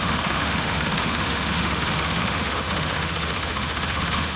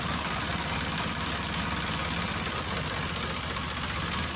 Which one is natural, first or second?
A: second